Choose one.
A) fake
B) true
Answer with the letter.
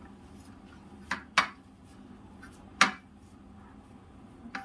B